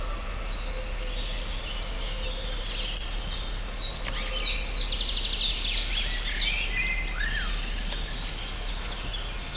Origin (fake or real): real